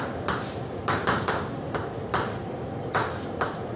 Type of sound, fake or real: fake